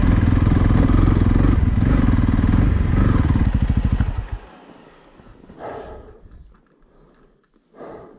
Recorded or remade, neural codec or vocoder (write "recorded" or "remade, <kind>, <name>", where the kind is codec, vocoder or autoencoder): recorded